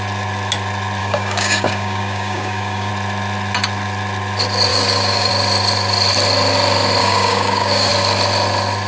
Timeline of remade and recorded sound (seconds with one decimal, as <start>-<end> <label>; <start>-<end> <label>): 0.0-1.0 recorded; 1.0-2.9 remade; 2.9-4.7 recorded; 4.7-5.3 remade; 5.3-7.0 recorded; 7.0-7.9 remade; 7.9-8.9 recorded